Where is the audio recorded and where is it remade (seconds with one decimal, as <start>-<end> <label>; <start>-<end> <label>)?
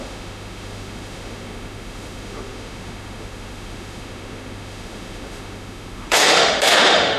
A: 0.0-7.2 remade